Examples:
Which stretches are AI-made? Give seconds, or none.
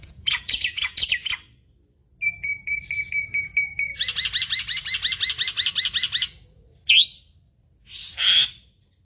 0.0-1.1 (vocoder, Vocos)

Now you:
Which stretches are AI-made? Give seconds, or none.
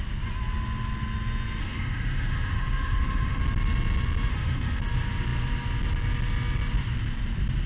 1.6-3.4 (autoencoder, DAC-VAE); 4.3-4.8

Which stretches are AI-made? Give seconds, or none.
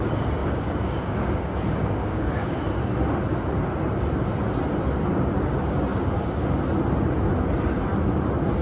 0.4-1.4 (codec, DAC); 1.8-2.6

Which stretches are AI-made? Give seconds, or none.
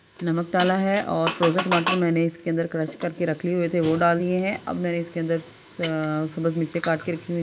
0.0-7.4 (autoencoder, DAC-VAE)